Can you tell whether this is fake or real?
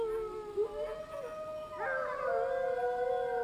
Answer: real